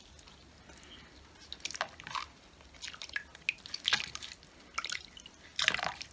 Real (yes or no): yes